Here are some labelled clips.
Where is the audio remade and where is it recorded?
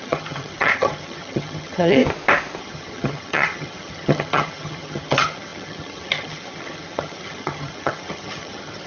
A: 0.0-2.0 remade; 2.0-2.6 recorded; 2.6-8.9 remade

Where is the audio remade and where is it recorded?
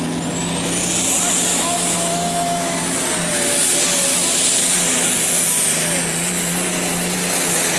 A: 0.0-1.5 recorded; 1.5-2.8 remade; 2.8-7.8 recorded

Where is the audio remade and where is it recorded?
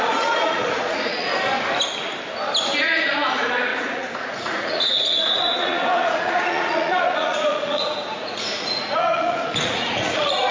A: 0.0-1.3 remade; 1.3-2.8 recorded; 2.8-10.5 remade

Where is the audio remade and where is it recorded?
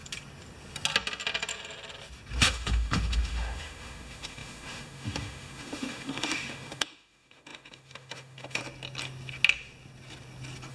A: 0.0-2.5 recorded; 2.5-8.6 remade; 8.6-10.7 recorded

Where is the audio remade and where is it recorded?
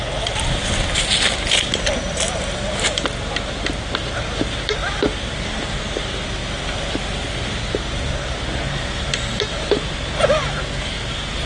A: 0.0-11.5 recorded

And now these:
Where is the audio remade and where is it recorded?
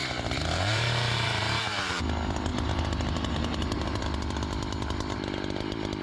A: 0.0-2.0 remade; 2.0-2.5 recorded; 2.5-4.0 remade; 4.0-6.0 recorded